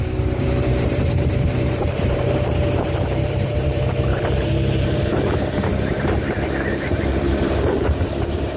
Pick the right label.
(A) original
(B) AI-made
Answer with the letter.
B